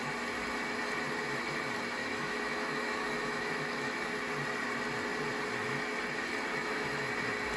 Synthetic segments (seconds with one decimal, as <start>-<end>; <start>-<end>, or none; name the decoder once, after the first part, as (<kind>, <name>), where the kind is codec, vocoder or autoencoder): 2.0-4.1 (autoencoder, DAC-VAE); 6.5-7.1